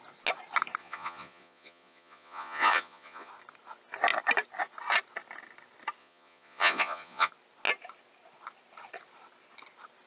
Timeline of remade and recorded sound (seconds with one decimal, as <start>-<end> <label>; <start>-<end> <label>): 0.0-0.8 recorded; 0.8-3.3 remade; 3.3-6.0 recorded; 6.0-7.3 remade; 7.3-10.1 recorded